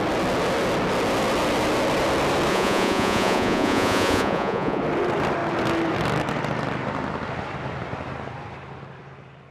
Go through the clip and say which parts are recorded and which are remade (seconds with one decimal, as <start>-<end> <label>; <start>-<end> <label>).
0.0-2.5 recorded; 2.5-4.8 remade; 4.8-9.5 recorded